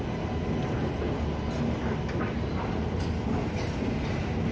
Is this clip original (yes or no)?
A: yes